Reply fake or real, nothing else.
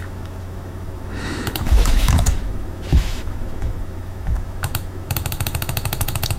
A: fake